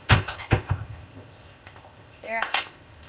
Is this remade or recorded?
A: remade